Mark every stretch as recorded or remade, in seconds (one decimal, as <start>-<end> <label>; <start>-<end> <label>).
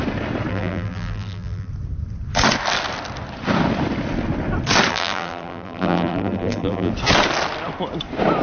0.0-0.5 recorded; 0.5-1.7 remade; 1.7-4.9 recorded; 4.9-6.9 remade; 6.9-8.4 recorded